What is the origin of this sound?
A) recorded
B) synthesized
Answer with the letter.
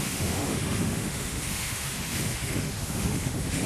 B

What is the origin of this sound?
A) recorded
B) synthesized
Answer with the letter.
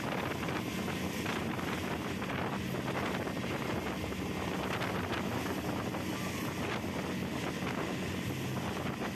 A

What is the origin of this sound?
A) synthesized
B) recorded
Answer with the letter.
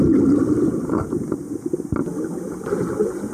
B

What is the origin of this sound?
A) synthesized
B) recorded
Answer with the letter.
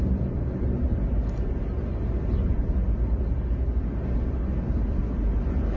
B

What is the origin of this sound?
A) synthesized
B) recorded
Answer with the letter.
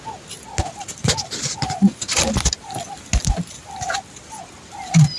B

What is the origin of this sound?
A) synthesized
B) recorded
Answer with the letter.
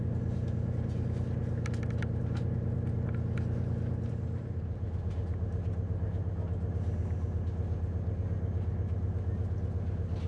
B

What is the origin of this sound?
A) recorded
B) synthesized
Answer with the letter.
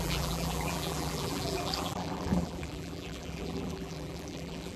B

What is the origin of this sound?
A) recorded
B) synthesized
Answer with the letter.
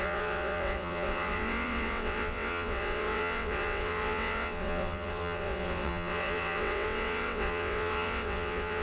B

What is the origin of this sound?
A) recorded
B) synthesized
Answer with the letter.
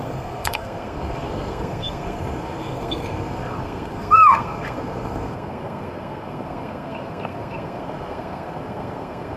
B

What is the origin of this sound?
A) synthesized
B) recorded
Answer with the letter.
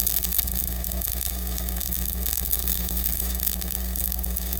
A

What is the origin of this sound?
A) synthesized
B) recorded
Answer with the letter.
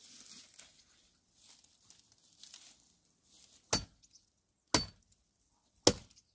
B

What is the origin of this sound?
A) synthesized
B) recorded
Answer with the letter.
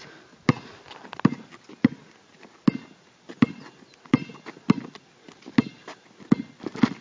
B